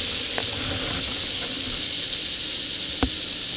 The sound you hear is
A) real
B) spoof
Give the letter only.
A